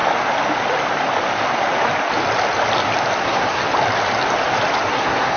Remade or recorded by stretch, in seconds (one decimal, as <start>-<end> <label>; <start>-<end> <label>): 0.0-3.2 recorded; 3.2-3.6 remade; 3.6-4.9 recorded; 4.9-5.4 remade